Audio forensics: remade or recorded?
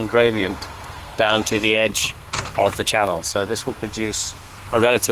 remade